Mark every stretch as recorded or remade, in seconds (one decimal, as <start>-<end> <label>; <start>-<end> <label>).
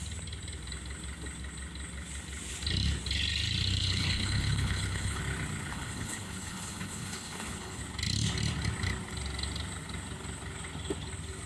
0.0-3.8 recorded; 3.8-5.2 remade; 5.2-5.7 recorded; 5.7-7.8 remade; 7.8-11.5 recorded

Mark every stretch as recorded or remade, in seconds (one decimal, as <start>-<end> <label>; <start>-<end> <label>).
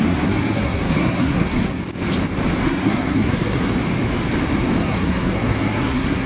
0.0-1.8 remade; 1.8-2.6 recorded; 2.6-3.7 remade; 3.7-4.8 recorded; 4.8-6.3 remade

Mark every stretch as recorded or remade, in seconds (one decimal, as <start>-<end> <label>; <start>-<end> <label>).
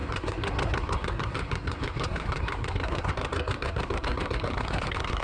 0.0-5.2 remade